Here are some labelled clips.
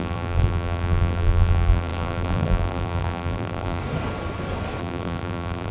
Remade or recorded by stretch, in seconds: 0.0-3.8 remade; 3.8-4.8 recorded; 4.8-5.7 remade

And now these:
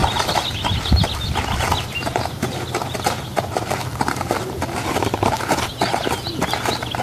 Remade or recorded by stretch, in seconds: 0.0-7.0 recorded